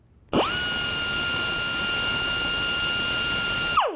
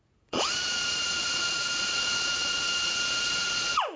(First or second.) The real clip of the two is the first